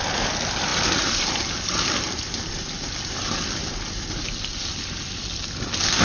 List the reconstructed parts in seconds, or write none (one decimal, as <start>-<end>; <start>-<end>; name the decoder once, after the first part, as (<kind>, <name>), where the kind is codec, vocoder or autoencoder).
none